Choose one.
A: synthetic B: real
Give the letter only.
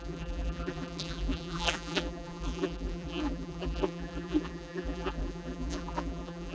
A